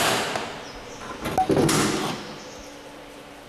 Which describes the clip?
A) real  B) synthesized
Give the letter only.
A